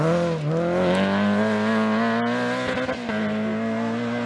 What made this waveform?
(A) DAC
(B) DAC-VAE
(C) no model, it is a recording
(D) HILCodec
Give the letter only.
C